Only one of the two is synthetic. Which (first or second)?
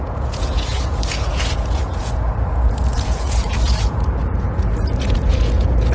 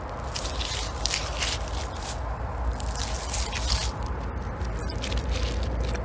first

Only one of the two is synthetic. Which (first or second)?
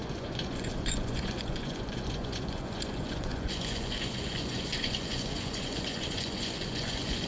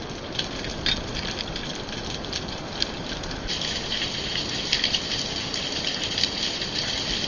first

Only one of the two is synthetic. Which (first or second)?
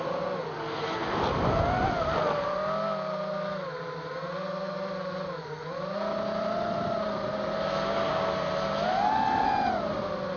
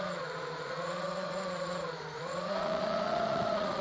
second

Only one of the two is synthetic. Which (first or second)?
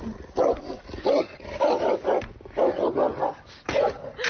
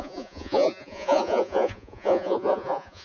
second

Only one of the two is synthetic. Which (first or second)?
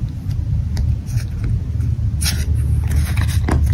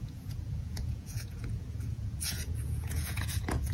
second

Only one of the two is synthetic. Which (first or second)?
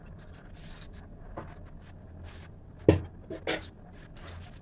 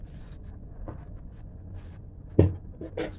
second